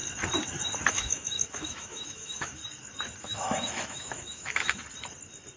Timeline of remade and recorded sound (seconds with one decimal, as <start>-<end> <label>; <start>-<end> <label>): 0.0-0.9 recorded; 0.9-2.6 remade; 2.6-3.2 recorded; 3.2-4.8 remade; 4.8-5.6 recorded